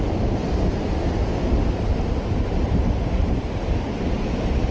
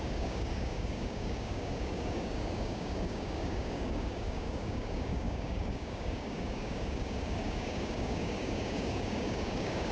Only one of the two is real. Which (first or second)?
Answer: first